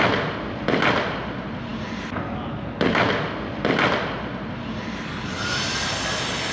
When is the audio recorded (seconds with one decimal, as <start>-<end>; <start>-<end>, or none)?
0.0-6.5